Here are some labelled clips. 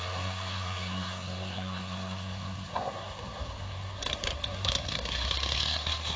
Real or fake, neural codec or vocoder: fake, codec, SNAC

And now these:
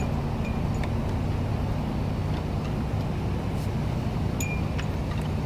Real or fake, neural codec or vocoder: real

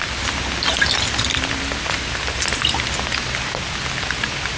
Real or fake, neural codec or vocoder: real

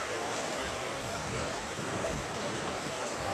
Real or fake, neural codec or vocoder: fake, codec, DAC